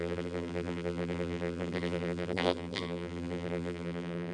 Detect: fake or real fake